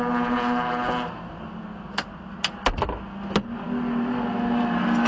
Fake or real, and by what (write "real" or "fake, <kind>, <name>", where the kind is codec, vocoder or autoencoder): real